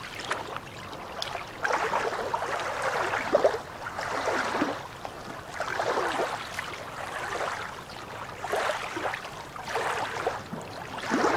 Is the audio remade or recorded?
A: recorded